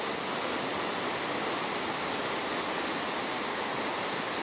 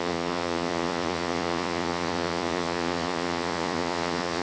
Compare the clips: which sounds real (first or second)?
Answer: first